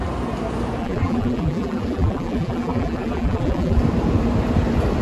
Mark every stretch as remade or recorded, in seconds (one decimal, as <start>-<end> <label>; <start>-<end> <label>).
0.0-0.8 recorded; 0.8-3.8 remade; 3.8-5.0 recorded